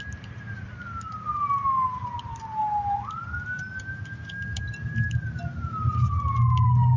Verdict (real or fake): real